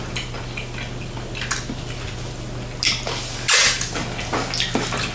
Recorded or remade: recorded